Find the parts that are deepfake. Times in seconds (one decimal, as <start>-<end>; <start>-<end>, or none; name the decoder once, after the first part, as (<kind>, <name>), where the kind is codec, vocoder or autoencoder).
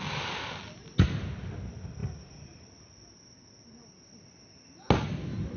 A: none